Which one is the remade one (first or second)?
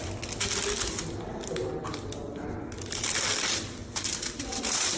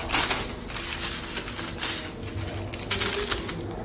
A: first